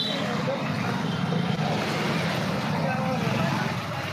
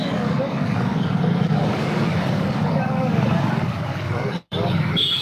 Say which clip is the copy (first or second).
second